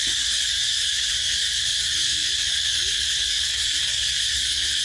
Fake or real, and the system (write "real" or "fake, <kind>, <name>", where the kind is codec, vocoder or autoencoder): fake, codec, DAC